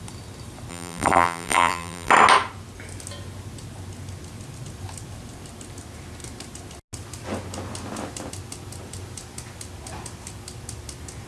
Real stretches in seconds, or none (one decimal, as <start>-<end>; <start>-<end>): 0.0-0.7; 2.1-11.3